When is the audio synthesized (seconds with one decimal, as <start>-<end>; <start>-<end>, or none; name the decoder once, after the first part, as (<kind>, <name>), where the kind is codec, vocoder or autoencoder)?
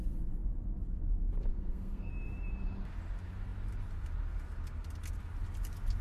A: 1.5-2.1 (codec, SNAC)